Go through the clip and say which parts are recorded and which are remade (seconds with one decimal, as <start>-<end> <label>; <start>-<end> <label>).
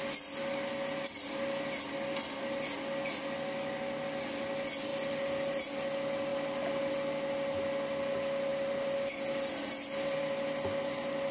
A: 0.0-4.9 recorded; 4.9-5.6 remade; 5.6-8.5 recorded; 8.5-11.3 remade